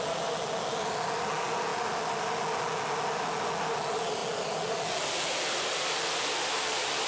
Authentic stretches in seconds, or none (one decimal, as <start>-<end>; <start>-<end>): 0.0-7.1